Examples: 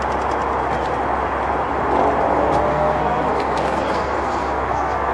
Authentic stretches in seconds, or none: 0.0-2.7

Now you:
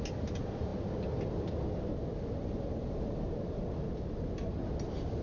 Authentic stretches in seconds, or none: 0.0-5.2

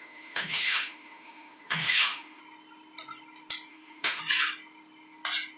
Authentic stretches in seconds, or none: 2.4-3.7; 4.2-5.6

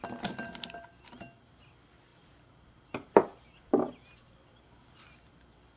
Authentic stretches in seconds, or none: 0.0-2.1; 3.7-5.8

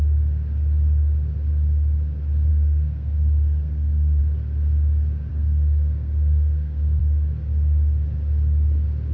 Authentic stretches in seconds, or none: 0.0-2.5; 4.2-5.3; 7.0-9.1

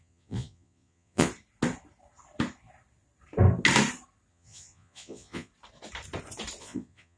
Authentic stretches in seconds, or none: 1.3-4.3; 5.5-6.6

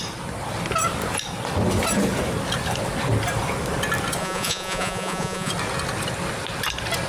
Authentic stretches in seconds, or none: 0.0-4.2; 5.5-7.1